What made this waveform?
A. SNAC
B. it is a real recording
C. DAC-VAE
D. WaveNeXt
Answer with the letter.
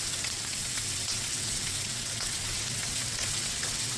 D